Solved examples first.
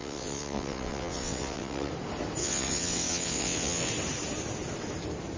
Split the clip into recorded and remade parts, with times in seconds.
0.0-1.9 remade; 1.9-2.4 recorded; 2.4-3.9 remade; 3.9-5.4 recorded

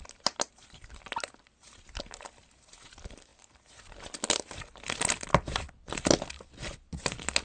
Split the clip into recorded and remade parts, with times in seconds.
0.0-7.4 recorded

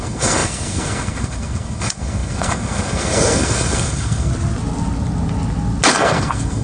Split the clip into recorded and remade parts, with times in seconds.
0.0-4.3 remade; 4.3-5.9 recorded; 5.9-6.6 remade

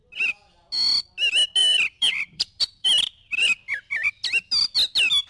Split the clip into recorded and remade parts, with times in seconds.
0.0-1.6 recorded; 1.6-4.1 remade; 4.1-5.3 recorded

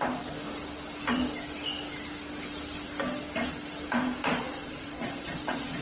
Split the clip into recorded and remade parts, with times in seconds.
0.0-4.2 recorded; 4.2-5.8 remade

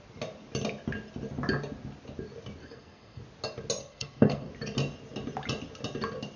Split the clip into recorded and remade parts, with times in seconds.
0.0-2.6 recorded; 2.6-3.2 remade; 3.2-3.8 recorded; 3.8-4.5 remade; 4.5-6.4 recorded

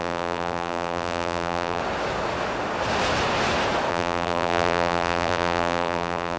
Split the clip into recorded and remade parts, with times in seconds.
0.0-1.8 remade; 1.8-3.9 recorded; 3.9-6.4 remade